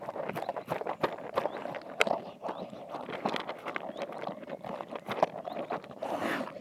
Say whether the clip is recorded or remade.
recorded